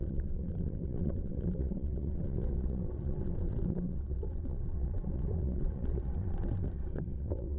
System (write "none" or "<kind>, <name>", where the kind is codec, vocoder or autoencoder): vocoder, WaveNeXt